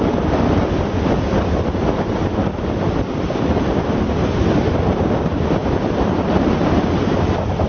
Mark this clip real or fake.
fake